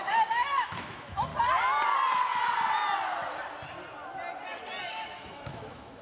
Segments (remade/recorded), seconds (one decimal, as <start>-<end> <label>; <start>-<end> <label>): 0.0-1.3 remade; 1.3-4.9 recorded; 4.9-6.0 remade